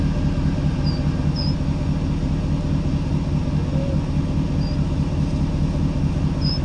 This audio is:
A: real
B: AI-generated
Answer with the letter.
A